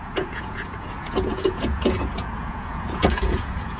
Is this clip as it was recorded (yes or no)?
no